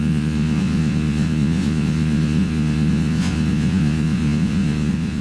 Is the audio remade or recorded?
remade